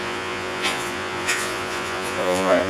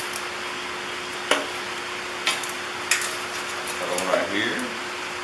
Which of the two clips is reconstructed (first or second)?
first